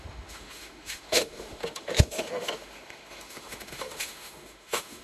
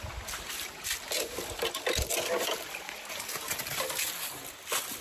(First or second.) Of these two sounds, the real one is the second